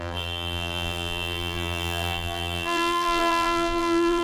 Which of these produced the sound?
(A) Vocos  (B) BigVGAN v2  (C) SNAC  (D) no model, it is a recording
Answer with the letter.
B